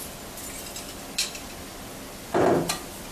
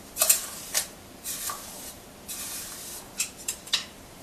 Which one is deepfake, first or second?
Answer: second